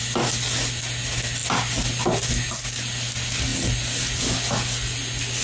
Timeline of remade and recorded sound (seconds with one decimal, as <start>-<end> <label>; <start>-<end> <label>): 0.0-5.4 recorded